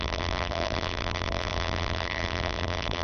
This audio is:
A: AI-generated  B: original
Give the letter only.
A